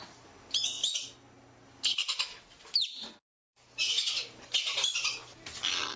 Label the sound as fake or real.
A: real